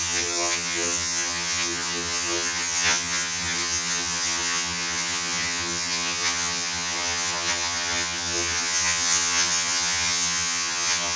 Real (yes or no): no